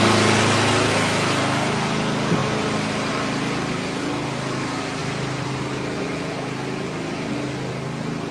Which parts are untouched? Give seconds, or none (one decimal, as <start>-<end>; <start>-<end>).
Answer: 0.0-2.4; 3.1-8.3